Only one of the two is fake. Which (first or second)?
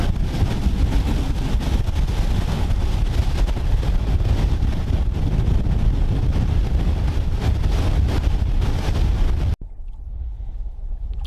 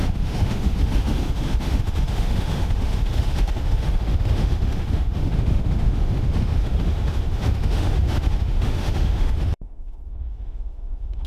second